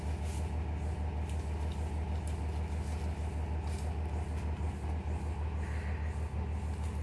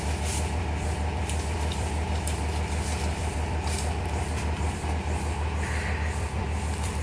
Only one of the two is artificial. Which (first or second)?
second